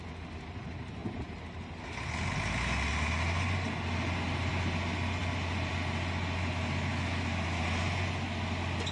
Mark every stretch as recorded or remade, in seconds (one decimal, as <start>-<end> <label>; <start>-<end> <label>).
0.0-6.9 recorded; 6.9-7.6 remade; 7.6-8.9 recorded